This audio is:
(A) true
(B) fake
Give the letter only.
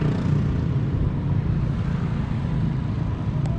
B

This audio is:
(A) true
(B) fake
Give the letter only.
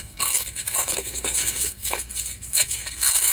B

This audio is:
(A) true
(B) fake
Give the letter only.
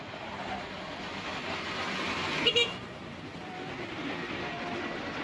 B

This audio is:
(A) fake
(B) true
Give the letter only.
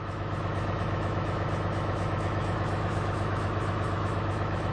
A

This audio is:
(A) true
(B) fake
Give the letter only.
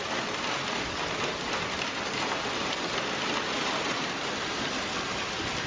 A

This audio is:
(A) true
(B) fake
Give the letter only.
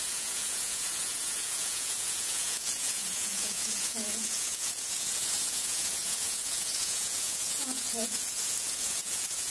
B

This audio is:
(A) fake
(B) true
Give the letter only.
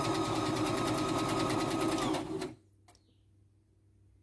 B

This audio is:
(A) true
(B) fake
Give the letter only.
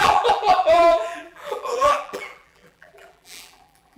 B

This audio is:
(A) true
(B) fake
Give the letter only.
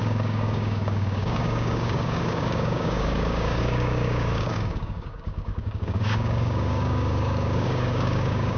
B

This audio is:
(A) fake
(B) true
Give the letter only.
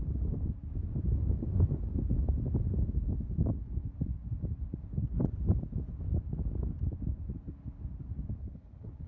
B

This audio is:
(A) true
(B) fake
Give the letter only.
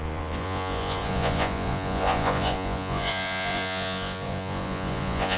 B